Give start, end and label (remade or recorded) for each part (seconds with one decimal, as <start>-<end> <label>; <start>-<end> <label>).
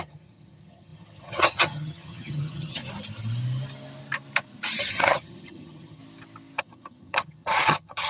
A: 0.0-2.8 remade; 2.8-4.8 recorded; 4.8-6.0 remade; 6.0-6.6 recorded; 6.6-8.1 remade